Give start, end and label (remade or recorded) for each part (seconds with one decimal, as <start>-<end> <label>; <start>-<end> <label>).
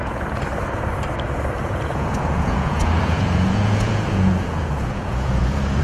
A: 0.0-0.5 remade; 0.5-1.6 recorded; 1.6-5.8 remade